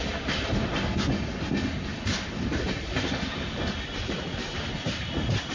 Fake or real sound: real